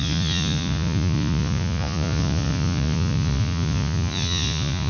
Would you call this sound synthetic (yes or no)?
yes